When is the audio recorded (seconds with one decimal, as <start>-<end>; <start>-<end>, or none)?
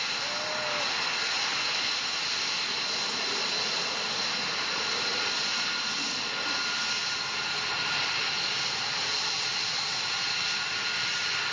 0.0-11.5